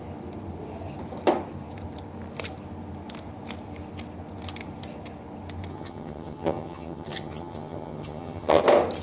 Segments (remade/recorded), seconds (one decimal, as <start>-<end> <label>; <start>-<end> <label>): 0.0-5.7 recorded; 5.7-8.6 remade; 8.6-9.0 recorded